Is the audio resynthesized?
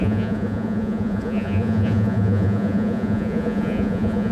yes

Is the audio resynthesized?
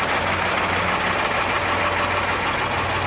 no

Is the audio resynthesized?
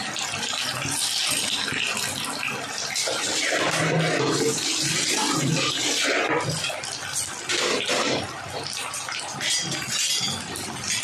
no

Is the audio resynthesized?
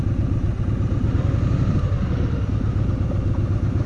no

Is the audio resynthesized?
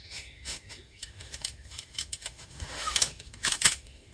yes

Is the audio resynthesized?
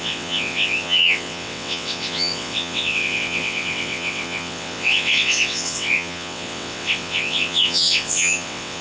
yes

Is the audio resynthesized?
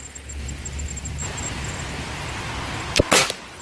no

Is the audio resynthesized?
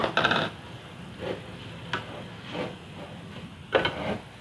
no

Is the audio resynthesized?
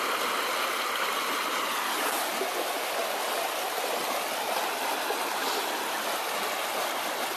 no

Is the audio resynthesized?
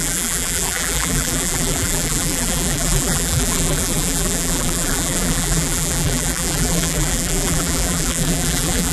yes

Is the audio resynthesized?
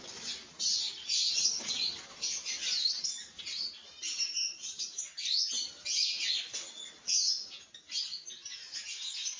no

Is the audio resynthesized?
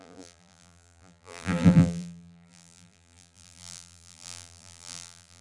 yes